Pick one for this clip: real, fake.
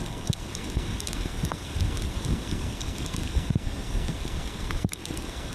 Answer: fake